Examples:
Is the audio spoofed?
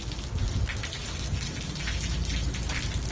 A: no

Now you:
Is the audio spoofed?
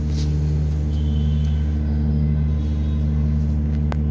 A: no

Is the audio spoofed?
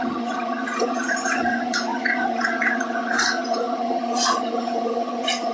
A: yes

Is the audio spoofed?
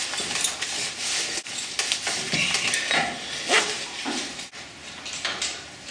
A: no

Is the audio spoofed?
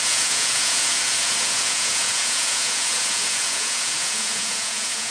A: yes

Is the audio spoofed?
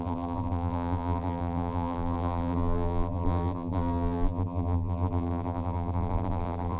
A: yes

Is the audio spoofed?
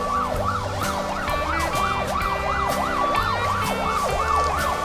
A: no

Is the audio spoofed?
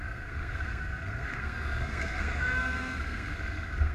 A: yes